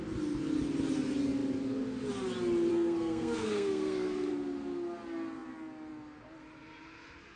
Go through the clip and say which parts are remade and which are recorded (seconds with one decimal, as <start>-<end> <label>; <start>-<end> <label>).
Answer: 0.0-2.7 recorded; 2.7-4.3 remade; 4.3-7.4 recorded